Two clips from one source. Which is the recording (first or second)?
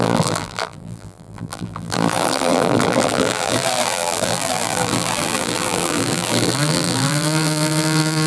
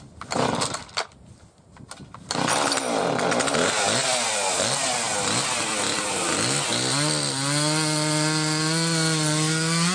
second